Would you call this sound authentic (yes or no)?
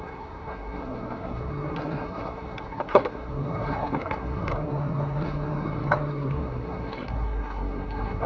no